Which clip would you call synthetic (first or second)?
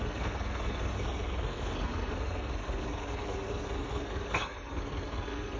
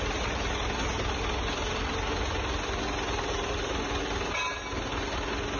first